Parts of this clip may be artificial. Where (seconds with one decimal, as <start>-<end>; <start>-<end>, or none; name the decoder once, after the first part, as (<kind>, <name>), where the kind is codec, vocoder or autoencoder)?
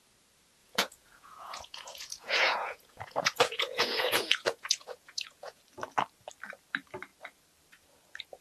0.6-5.6 (vocoder, Vocos)